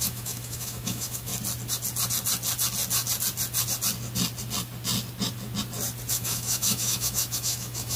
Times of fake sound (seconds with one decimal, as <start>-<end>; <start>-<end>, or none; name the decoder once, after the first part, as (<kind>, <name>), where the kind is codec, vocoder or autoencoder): 0.0-1.3 (autoencoder, DAC-VAE); 6.1-8.0